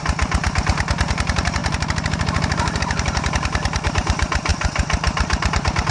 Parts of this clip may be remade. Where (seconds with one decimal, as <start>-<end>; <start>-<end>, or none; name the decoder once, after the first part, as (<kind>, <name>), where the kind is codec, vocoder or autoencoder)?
0.0-5.9 (vocoder, BigVGAN v2)